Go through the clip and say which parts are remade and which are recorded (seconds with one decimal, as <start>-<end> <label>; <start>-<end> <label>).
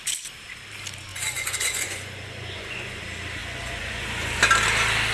0.0-1.1 recorded; 1.1-3.0 remade; 3.0-3.4 recorded; 3.4-4.4 remade; 4.4-5.1 recorded